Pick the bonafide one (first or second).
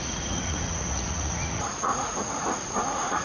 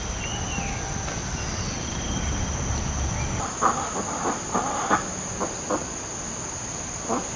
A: second